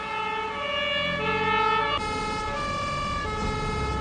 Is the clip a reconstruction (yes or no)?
no